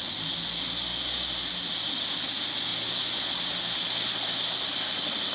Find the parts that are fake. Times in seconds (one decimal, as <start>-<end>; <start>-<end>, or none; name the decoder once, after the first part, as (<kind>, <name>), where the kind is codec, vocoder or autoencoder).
none